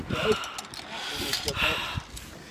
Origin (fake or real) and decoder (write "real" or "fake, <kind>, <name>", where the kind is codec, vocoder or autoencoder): real